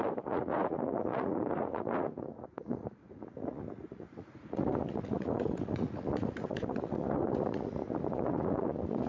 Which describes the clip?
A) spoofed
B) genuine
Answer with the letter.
A